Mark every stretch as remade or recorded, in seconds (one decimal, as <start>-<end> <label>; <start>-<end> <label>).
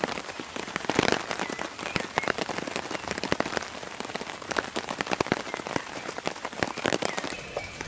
0.0-1.1 remade; 1.1-5.8 recorded; 5.8-7.9 remade